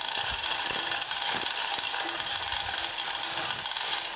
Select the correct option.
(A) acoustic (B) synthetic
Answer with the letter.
A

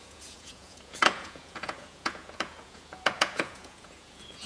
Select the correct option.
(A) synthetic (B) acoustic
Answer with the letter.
A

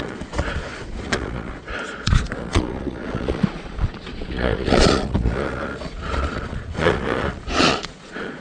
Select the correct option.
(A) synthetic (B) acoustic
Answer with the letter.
A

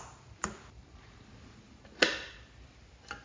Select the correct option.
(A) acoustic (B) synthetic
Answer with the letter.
A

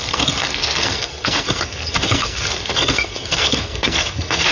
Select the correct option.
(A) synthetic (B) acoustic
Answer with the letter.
A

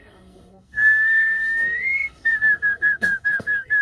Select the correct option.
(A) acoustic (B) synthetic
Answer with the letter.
B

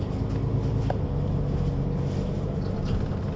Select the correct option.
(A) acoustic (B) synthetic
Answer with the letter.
A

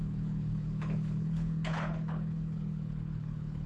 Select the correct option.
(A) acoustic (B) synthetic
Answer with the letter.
B